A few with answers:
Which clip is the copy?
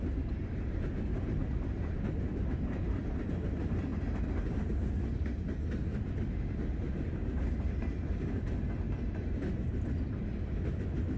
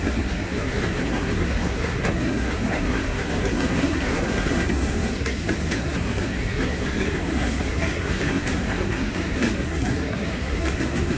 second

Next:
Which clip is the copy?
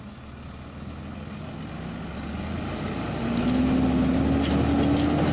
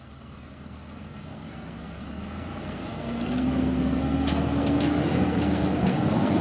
second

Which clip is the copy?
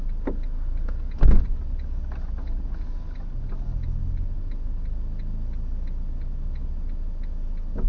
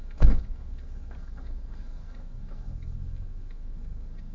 second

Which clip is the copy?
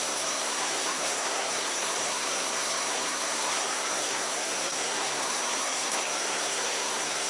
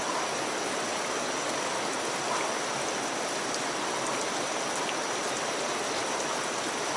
first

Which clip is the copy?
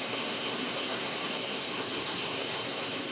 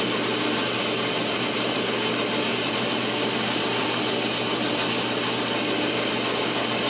first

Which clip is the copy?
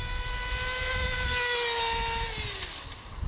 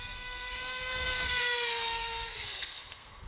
second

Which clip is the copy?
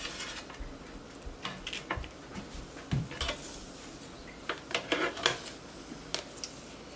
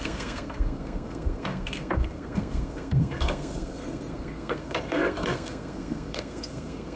second